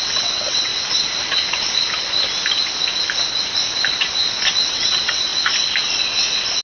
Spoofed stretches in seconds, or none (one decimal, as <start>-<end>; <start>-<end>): 0.0-0.7; 4.7-5.3